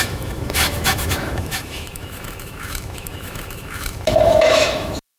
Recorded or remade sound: remade